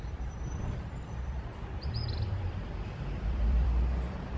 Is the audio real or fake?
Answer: fake